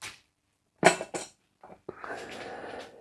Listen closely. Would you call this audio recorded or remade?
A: recorded